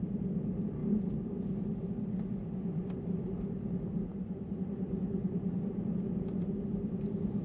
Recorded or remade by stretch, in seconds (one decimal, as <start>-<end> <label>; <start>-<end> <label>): 0.0-7.4 remade